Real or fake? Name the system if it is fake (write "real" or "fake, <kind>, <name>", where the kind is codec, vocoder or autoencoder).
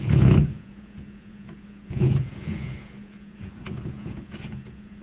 fake, vocoder, Vocos